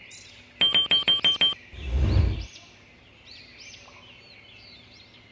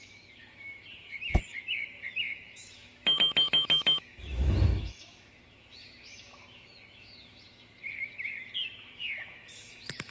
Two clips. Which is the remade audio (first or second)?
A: second